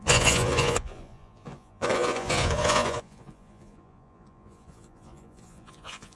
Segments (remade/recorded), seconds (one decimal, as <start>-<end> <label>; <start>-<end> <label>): 0.0-6.2 remade